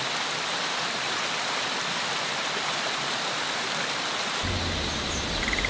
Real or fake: real